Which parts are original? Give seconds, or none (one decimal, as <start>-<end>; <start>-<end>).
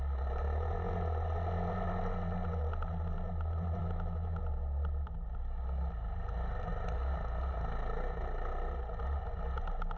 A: 0.0-3.8; 4.4-10.0